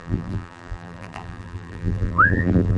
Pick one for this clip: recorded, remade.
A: remade